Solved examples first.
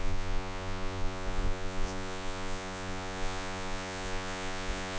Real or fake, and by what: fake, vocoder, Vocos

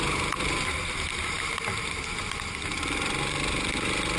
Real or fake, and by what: real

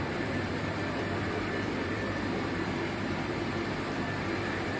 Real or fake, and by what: fake, vocoder, BigVGAN v2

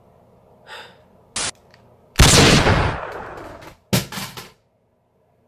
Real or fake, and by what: real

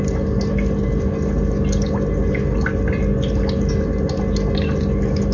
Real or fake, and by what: real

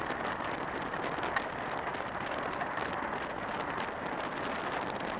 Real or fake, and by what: real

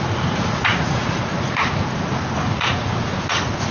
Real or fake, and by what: fake, vocoder, Vocos